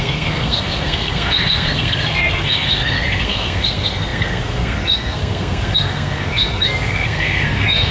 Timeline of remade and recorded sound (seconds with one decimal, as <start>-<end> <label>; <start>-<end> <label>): 0.0-7.9 remade